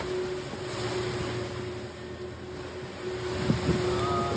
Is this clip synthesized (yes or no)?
no